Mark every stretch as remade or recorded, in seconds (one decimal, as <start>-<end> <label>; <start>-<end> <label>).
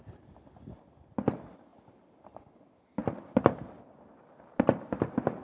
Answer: 0.0-5.4 recorded